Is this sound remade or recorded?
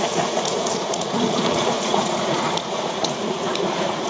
remade